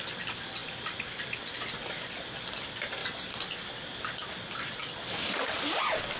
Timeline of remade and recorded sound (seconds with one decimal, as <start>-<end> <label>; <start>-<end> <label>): 0.0-6.2 recorded

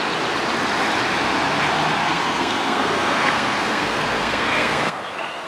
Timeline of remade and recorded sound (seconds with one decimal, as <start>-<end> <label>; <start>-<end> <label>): 0.0-2.0 recorded; 2.0-5.5 remade

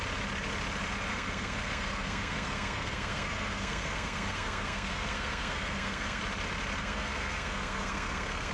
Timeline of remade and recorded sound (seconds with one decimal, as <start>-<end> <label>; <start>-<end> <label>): 0.0-1.1 recorded; 1.1-6.2 remade; 6.2-6.8 recorded; 6.8-8.5 remade

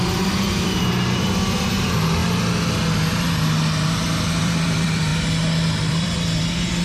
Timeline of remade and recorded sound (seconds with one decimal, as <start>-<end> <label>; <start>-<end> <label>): 0.0-2.2 remade; 2.2-3.9 recorded; 3.9-5.1 remade; 5.1-5.9 recorded; 5.9-6.8 remade

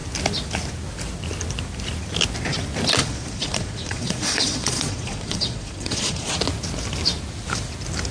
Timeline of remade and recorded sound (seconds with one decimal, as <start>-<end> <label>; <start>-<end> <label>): 0.0-3.0 recorded; 3.0-6.3 remade; 6.3-8.1 recorded